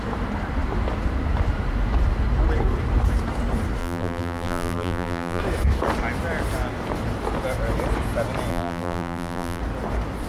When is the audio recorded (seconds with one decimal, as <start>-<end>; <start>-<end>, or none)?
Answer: 0.0-3.8; 5.4-8.5; 9.6-10.3